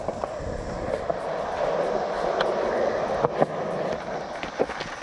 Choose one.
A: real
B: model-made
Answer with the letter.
A